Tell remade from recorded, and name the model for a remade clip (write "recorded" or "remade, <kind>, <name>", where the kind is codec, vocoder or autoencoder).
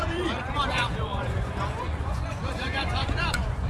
remade, vocoder, Vocos